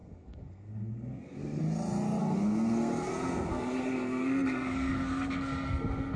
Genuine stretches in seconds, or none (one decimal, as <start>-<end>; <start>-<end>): 1.6-2.2